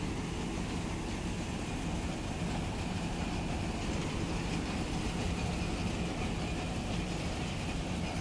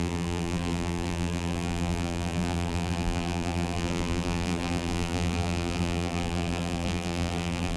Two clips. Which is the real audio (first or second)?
first